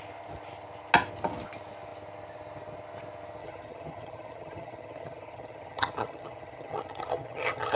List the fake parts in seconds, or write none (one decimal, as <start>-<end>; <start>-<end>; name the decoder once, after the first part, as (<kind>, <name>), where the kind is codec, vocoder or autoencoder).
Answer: 3.4-7.8 (vocoder, HiFi-GAN)